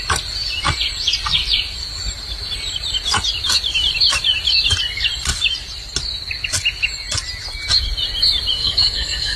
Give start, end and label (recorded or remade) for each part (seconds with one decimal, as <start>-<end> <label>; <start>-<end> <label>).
0.0-8.6 recorded; 8.6-9.4 remade